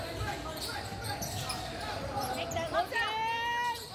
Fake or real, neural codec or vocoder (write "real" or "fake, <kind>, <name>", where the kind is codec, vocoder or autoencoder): real